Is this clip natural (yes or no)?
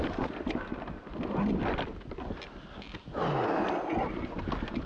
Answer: yes